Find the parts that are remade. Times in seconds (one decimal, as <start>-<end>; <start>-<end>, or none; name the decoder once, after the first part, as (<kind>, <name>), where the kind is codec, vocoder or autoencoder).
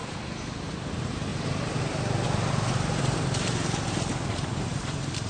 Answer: 0.7-1.3 (vocoder, BigVGAN v2); 2.7-5.3